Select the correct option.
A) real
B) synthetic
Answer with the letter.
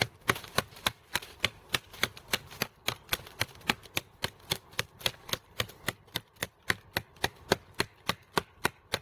A